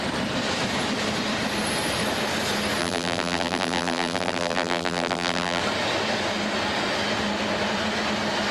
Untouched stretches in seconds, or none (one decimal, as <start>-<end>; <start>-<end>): 0.0-2.8; 5.6-8.5